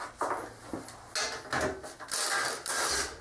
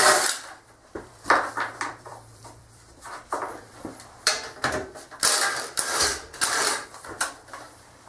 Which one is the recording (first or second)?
first